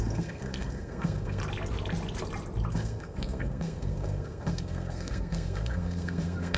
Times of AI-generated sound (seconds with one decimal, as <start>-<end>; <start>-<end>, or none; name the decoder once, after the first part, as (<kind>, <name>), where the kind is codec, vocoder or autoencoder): 0.0-1.4 (codec, SNAC); 2.7-6.6